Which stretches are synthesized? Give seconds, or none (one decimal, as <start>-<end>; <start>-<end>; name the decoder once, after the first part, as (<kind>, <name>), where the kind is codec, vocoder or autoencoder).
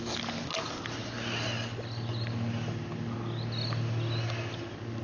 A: none